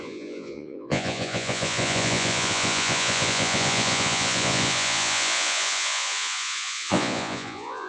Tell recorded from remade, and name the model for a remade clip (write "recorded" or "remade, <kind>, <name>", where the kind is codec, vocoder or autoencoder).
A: remade, vocoder, Vocos